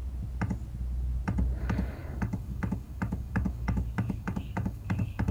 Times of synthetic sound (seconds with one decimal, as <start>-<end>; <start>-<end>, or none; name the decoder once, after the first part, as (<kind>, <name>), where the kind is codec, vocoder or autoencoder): 1.6-5.3 (codec, DAC)